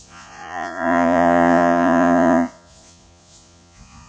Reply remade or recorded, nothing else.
remade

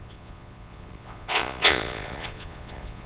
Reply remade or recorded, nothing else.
remade